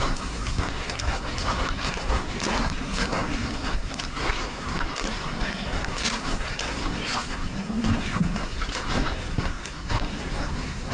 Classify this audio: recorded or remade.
remade